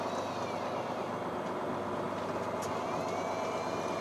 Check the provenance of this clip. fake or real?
real